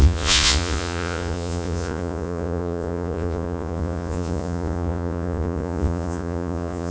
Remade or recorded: remade